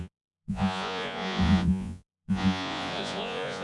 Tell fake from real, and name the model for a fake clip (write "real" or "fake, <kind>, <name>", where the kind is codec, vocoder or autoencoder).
fake, vocoder, Vocos